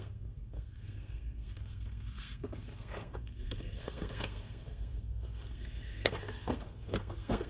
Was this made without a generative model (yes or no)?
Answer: no